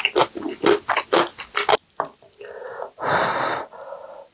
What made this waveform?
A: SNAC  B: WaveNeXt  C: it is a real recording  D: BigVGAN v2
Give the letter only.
C